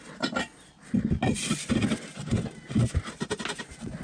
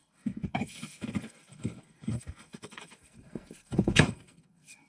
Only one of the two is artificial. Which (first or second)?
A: second